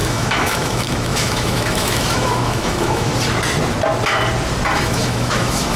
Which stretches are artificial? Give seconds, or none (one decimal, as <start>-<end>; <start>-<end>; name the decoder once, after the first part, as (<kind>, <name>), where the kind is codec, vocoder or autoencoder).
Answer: 0.0-3.1 (autoencoder, DAC-VAE); 4.8-5.8